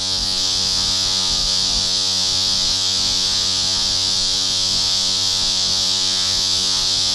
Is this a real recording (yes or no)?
no